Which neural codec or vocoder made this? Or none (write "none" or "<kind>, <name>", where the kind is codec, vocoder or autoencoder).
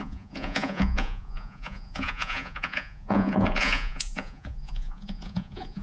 vocoder, Vocos